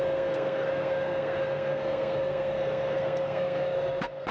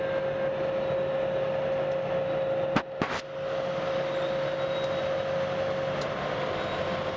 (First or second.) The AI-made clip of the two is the first